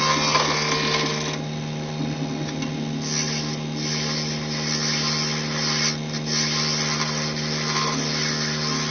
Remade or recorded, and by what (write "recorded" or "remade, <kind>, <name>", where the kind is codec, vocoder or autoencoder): recorded